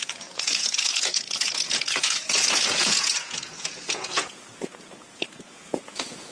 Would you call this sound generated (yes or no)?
yes